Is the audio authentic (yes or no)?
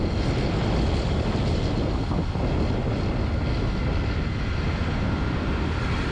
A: yes